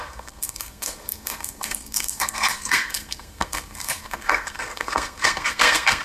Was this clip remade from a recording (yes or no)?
yes